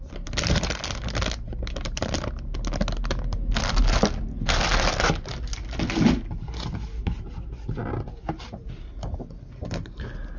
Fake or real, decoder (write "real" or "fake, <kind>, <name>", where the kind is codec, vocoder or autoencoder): real